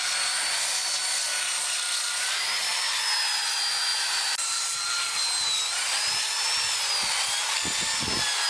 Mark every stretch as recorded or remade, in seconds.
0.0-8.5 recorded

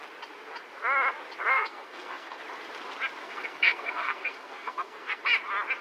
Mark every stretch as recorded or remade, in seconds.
0.0-1.5 recorded; 1.5-2.4 remade; 2.4-3.2 recorded; 3.2-5.2 remade; 5.2-5.8 recorded

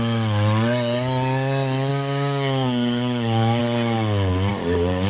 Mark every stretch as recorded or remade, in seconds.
0.0-1.9 recorded; 1.9-3.6 remade; 3.6-4.5 recorded; 4.5-5.1 remade

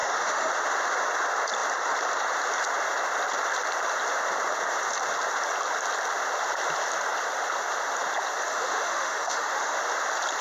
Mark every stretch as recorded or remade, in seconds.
0.0-0.5 remade; 0.5-8.5 recorded; 8.5-9.8 remade; 9.8-10.4 recorded

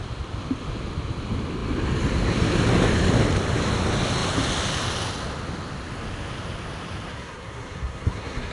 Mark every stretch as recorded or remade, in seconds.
0.0-7.1 recorded; 7.1-8.5 remade

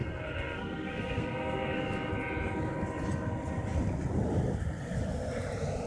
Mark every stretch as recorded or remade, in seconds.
0.0-2.1 remade; 2.1-5.9 recorded